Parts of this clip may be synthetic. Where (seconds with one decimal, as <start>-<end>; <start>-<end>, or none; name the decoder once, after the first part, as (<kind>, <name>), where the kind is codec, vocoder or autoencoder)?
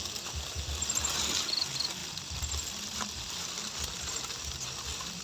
2.0-5.2 (vocoder, BigVGAN v2)